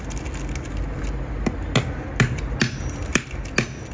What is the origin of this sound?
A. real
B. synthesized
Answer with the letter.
A